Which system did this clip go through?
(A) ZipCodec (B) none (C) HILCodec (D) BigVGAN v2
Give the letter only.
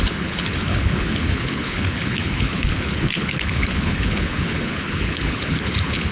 C